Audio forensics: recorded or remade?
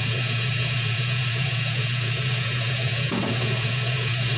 remade